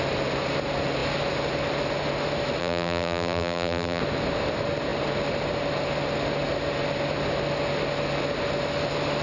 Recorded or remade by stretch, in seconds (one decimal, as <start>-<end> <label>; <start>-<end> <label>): 0.0-2.6 recorded; 2.6-4.0 remade; 4.0-9.2 recorded